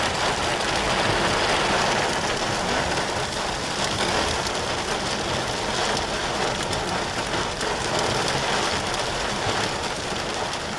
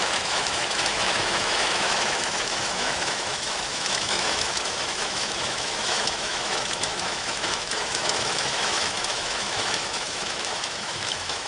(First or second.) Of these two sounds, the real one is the first